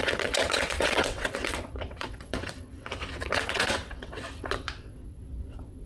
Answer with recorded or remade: remade